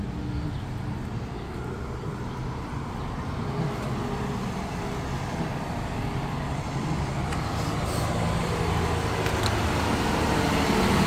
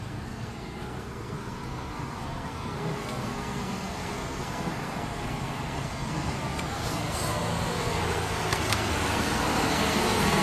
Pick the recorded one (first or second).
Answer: first